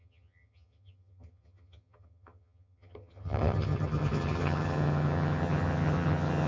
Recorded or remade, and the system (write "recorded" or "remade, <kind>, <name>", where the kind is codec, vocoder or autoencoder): remade, vocoder, HiFi-GAN